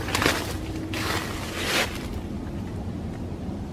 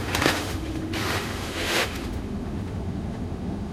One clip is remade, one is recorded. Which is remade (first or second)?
second